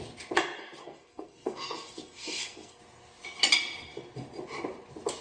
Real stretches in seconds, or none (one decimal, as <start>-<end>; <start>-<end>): 0.0-0.8; 2.8-5.2